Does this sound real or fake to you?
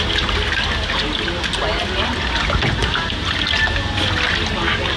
real